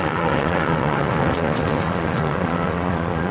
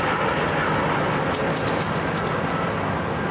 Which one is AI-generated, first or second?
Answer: first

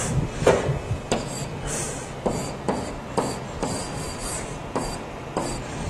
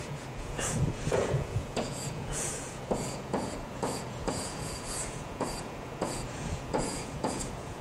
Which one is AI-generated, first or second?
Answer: second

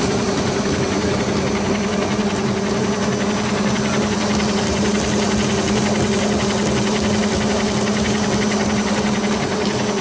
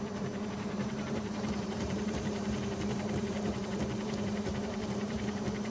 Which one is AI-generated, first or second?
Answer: second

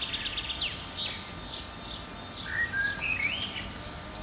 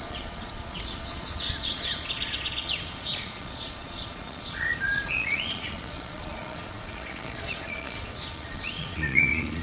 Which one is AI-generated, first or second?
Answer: second